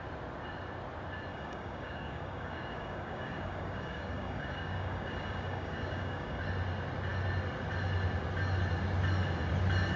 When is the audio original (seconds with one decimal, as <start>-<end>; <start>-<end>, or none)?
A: 0.0-1.3; 6.4-10.0

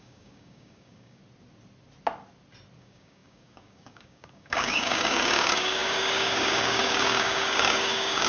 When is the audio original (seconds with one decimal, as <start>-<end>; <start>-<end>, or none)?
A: 1.2-2.8

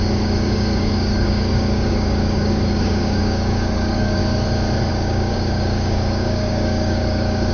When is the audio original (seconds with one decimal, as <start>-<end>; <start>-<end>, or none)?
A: 4.2-4.9

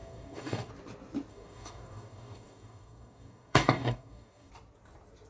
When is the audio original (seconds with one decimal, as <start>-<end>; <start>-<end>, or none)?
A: 0.7-1.3; 4.5-5.3

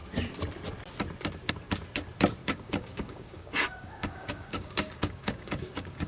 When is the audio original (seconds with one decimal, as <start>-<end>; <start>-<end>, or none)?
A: 0.0-2.4

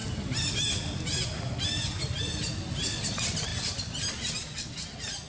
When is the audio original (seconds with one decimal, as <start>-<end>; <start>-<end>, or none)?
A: 0.0-5.3

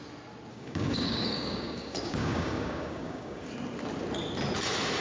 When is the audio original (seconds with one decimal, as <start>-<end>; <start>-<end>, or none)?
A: 0.0-0.5; 3.5-5.0

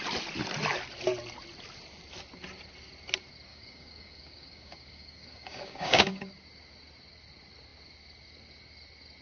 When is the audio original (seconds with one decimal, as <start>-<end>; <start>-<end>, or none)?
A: 0.0-3.5; 6.3-9.2